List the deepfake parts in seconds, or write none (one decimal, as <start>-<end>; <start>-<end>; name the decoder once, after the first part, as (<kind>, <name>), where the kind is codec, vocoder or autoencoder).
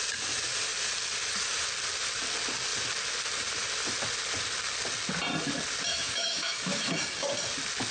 5.9-7.0 (autoencoder, DAC-VAE)